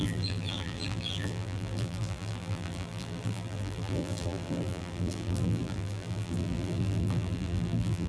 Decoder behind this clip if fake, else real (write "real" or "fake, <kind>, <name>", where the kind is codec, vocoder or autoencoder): fake, vocoder, BigVGAN v2